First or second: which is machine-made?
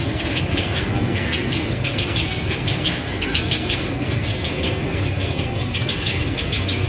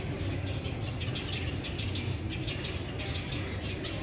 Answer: first